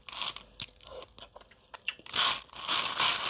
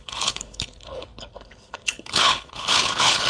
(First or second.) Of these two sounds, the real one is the first